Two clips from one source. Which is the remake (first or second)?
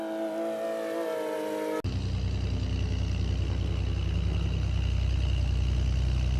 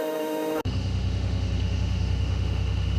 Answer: second